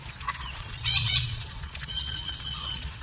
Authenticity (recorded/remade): remade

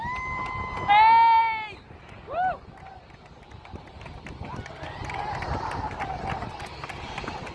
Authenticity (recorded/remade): recorded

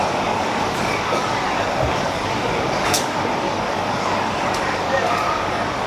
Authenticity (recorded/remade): remade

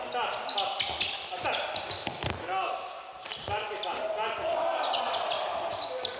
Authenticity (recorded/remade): recorded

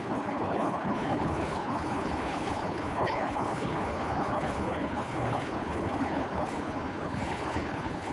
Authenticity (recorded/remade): remade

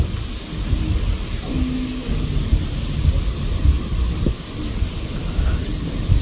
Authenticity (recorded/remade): recorded